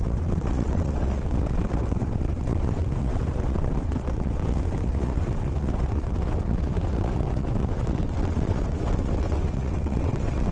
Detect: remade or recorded remade